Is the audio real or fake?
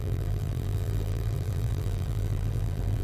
fake